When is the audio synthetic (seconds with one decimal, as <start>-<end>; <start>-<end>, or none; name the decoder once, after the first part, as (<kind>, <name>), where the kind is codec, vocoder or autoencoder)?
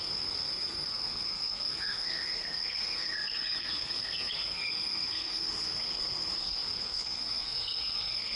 0.0-8.4 (codec, SNAC)